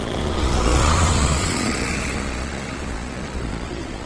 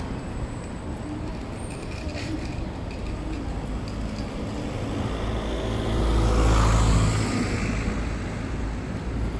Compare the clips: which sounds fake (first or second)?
first